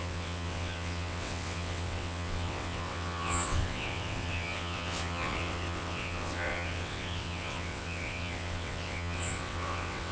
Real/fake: fake